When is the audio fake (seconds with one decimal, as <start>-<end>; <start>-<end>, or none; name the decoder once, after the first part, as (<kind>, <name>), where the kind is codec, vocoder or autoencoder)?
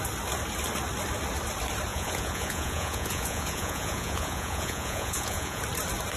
1.9-5.6 (vocoder, Vocos)